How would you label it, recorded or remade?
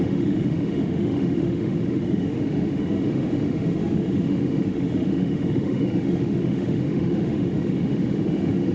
remade